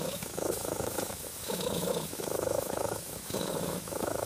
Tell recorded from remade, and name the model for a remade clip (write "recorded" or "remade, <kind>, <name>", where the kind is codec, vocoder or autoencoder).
remade, autoencoder, DAC-VAE